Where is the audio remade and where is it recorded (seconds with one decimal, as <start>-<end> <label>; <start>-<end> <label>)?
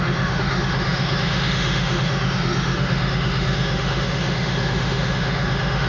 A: 0.0-5.9 remade